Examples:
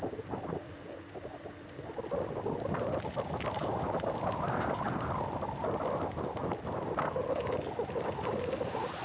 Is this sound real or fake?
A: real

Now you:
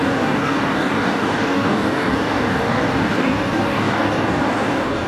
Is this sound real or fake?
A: fake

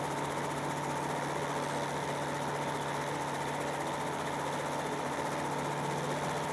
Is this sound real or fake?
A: real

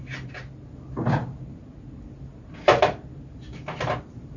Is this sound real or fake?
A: real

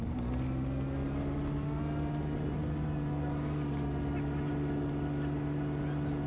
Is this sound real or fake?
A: real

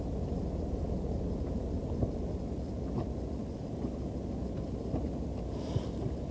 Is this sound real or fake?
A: real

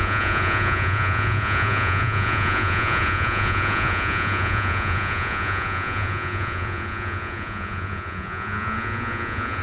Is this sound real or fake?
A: fake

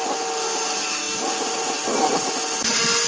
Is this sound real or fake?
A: real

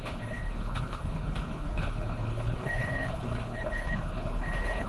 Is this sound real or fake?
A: fake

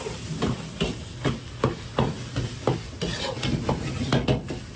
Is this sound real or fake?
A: real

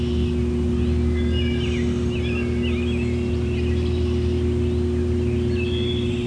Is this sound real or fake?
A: real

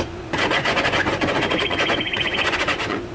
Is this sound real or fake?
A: fake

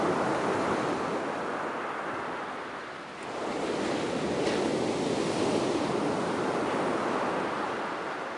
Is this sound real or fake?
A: real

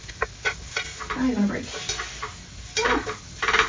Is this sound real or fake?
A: real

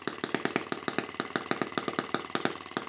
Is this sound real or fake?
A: real